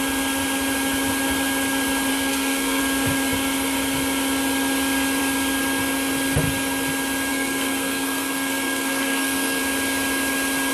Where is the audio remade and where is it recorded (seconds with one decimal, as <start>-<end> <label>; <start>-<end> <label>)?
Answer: 0.0-2.1 recorded; 2.1-2.8 remade; 2.8-7.3 recorded; 7.3-9.6 remade; 9.6-10.7 recorded